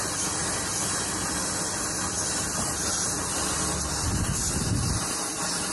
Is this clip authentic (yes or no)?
yes